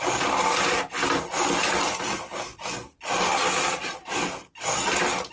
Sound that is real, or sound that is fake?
real